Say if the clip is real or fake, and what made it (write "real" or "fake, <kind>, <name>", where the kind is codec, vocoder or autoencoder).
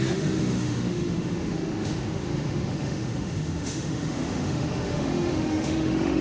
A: fake, autoencoder, DAC-VAE